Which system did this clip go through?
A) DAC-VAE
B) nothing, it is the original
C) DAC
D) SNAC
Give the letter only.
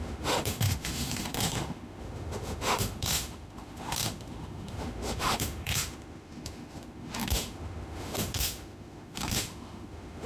A